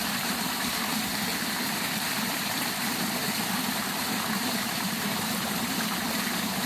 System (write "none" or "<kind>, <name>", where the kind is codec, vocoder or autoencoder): vocoder, BigVGAN v2